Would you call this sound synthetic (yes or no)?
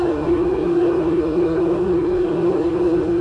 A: yes